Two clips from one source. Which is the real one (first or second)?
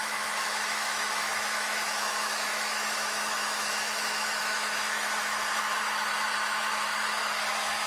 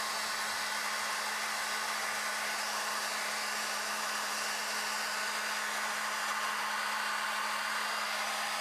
second